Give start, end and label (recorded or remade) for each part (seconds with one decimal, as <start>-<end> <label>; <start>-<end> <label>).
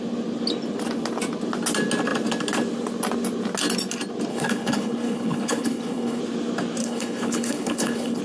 0.0-4.3 recorded; 4.3-6.2 remade; 6.2-6.8 recorded; 6.8-8.2 remade